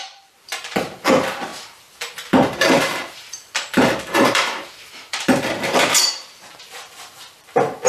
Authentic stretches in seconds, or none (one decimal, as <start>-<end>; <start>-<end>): none